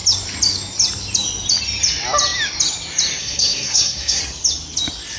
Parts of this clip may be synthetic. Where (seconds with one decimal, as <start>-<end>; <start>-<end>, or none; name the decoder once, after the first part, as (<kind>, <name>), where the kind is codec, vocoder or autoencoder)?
3.2-4.2 (codec, SNAC)